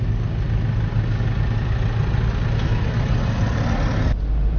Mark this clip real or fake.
real